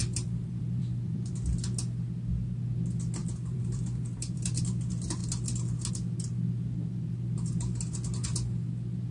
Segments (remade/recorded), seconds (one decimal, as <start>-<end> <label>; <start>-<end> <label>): 0.0-1.3 remade; 1.3-3.2 recorded; 3.2-4.6 remade; 4.6-9.1 recorded